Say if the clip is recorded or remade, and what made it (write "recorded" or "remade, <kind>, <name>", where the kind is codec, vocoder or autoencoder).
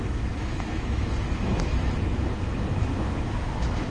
remade, autoencoder, DAC-VAE